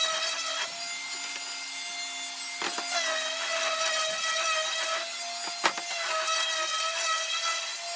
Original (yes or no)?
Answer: yes